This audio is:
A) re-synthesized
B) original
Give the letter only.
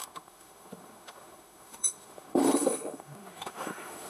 A